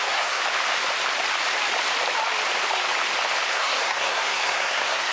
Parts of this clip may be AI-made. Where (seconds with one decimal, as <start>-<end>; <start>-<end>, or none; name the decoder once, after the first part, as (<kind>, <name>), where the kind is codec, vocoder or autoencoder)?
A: 0.0-0.4 (codec, SNAC); 3.5-5.1